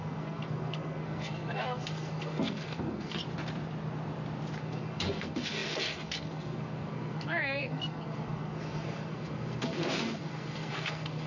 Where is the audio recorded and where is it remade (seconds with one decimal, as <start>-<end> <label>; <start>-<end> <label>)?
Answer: 0.0-3.2 remade; 3.2-4.6 recorded; 4.6-11.3 remade